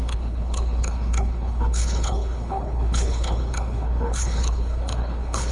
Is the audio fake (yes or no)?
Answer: yes